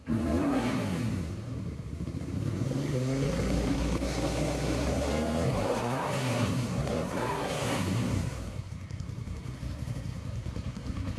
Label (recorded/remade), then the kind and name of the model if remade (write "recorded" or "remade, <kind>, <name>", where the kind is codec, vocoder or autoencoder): remade, codec, SNAC